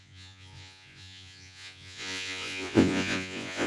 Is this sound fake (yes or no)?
yes